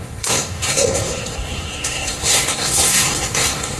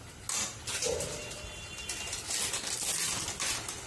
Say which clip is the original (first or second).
second